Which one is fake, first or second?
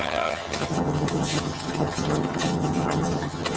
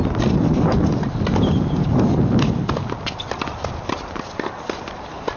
first